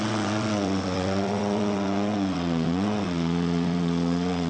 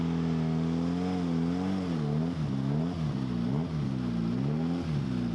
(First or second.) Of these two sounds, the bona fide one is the second